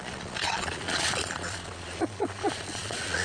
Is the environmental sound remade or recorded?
remade